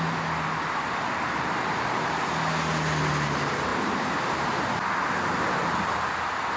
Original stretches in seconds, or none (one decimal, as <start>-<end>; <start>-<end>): 0.0-3.7; 4.7-6.6